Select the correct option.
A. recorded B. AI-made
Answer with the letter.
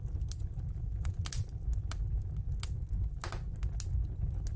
A